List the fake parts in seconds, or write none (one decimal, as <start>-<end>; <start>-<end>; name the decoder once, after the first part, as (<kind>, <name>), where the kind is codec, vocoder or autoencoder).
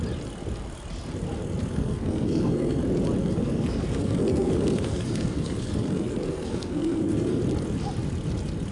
1.6-2.8 (codec, SNAC); 3.2-7.4